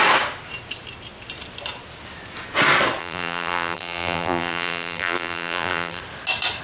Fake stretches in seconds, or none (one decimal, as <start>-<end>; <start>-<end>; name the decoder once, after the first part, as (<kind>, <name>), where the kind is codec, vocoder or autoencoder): 3.0-6.0 (vocoder, BigVGAN v2)